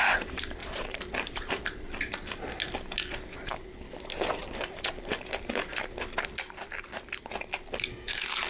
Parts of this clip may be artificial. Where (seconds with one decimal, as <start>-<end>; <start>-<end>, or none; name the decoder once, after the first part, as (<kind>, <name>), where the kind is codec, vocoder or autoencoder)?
0.6-1.6 (vocoder, BigVGAN v2); 4.4-5.8